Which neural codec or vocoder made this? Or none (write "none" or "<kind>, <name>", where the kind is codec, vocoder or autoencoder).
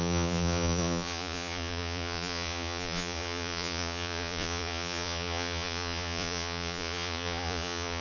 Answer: vocoder, Vocos